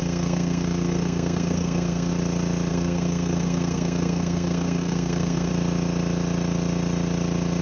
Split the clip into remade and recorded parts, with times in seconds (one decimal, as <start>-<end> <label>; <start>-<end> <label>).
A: 0.0-2.1 remade; 2.1-2.7 recorded; 2.7-5.5 remade; 5.5-7.6 recorded